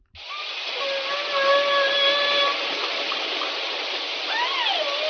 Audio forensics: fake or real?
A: real